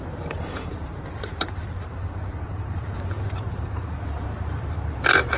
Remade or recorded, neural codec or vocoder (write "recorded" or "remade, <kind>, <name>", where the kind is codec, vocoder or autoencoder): remade, vocoder, BigVGAN v2